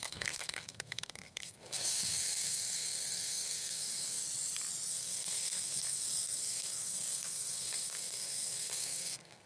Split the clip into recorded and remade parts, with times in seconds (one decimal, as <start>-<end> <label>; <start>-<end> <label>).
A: 0.0-4.2 remade; 4.2-4.9 recorded; 4.9-9.5 remade